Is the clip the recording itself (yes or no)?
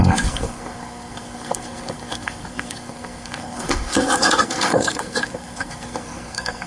no